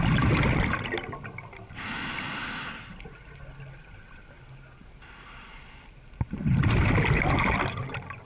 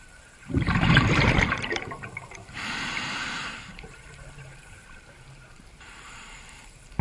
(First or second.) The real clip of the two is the first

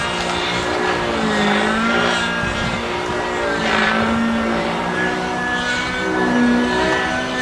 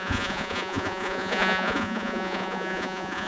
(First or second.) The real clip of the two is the first